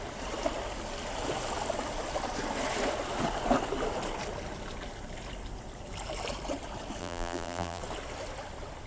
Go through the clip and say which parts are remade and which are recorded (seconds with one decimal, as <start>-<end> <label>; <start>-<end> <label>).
0.0-7.0 recorded; 7.0-7.8 remade; 7.8-8.9 recorded